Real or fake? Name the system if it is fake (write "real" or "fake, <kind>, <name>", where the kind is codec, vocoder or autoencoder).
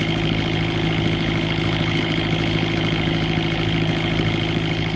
fake, codec, HILCodec